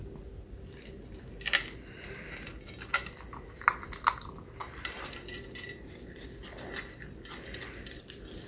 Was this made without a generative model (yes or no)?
yes